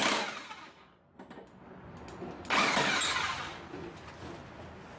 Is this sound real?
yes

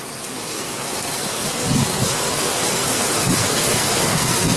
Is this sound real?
no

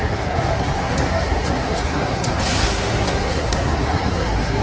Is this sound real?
no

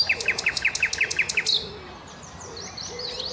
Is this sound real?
yes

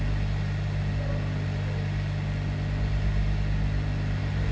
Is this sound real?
yes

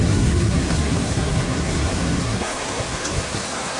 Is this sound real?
no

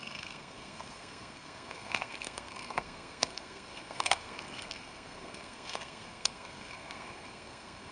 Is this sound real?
no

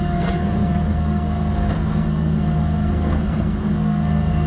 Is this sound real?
no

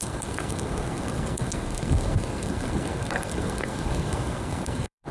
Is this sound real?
no